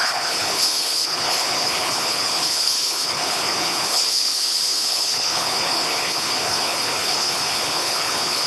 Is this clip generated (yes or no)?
yes